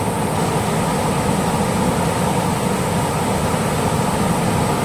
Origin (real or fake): real